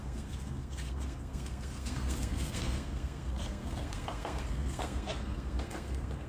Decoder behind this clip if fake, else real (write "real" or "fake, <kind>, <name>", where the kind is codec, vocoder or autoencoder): fake, codec, SNAC